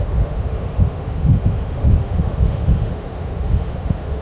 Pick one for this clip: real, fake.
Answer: fake